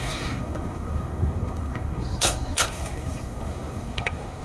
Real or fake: fake